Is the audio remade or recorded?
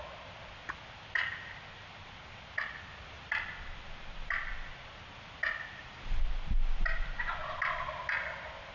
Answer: recorded